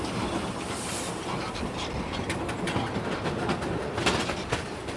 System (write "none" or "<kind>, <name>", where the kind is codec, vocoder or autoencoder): none